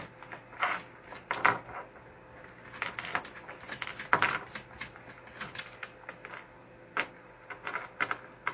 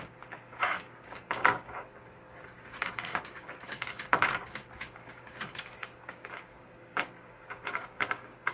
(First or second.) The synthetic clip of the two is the second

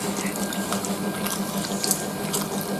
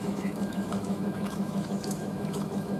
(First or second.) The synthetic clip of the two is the second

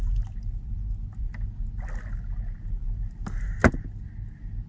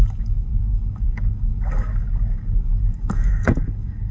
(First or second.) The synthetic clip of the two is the second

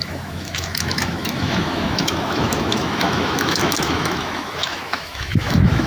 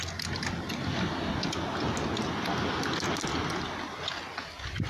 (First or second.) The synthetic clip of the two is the first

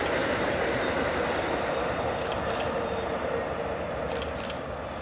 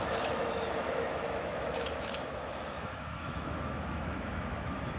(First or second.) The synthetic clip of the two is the second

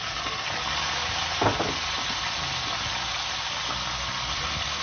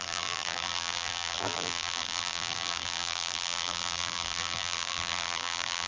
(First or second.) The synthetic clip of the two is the second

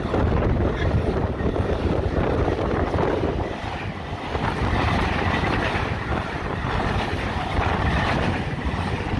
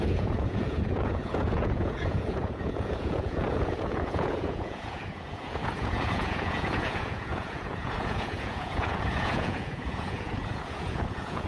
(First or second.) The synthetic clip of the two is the second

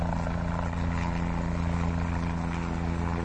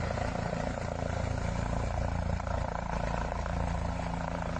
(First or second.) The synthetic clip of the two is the second